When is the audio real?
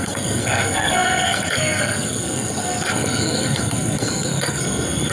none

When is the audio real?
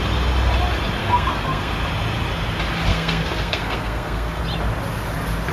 0.0-1.0; 1.7-2.9; 4.4-5.5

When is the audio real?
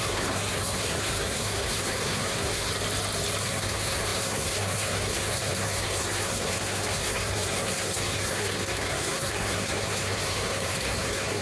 2.7-3.4